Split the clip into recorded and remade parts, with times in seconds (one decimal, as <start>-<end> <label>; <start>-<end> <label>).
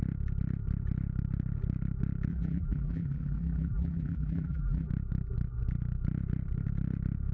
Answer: 0.0-2.3 recorded; 2.3-4.9 remade; 4.9-7.3 recorded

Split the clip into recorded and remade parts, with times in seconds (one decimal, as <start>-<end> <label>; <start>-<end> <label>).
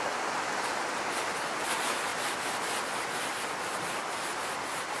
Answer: 0.0-5.0 recorded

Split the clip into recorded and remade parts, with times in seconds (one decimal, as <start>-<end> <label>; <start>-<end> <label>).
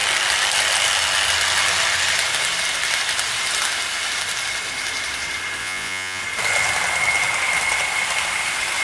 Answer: 0.0-5.6 recorded; 5.6-6.2 remade; 6.2-8.8 recorded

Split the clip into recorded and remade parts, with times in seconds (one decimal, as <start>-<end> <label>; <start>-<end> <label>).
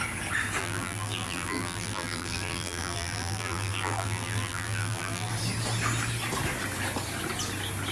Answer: 0.0-0.6 recorded; 0.6-5.3 remade; 5.3-7.9 recorded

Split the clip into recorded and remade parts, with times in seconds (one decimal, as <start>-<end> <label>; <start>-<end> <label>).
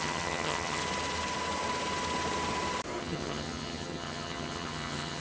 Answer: 0.0-0.8 remade; 0.8-3.0 recorded; 3.0-5.2 remade